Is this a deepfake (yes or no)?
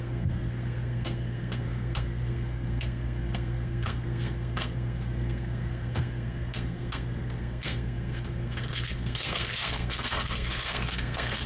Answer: yes